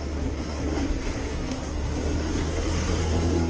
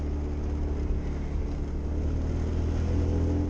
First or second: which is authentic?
second